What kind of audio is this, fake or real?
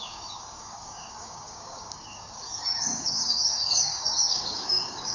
fake